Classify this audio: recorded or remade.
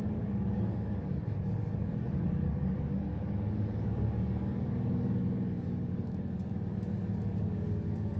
remade